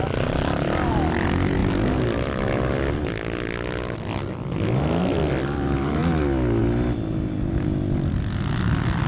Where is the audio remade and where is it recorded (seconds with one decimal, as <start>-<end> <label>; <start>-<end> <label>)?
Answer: 0.0-9.1 recorded